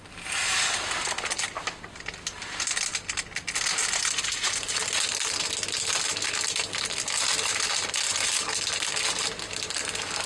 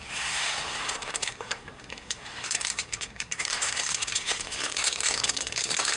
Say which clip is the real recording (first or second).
first